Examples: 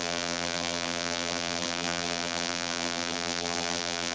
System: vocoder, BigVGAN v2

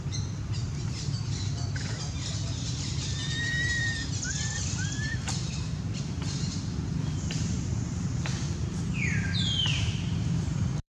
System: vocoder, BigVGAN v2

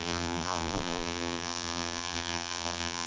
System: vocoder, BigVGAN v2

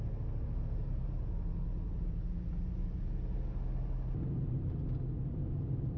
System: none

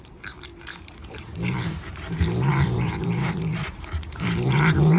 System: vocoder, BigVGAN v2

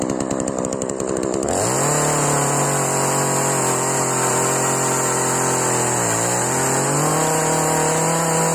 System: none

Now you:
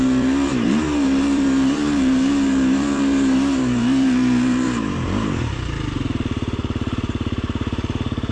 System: vocoder, BigVGAN v2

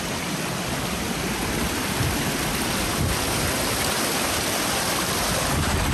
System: none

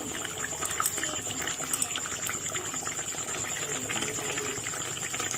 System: none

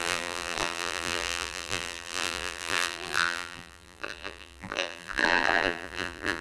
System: vocoder, BigVGAN v2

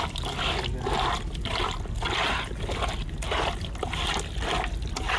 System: none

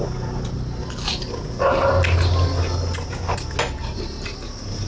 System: none